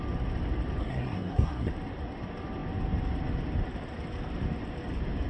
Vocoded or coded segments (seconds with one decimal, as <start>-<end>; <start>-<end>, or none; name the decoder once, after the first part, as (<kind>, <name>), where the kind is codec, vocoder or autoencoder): 0.8-1.7 (codec, SNAC)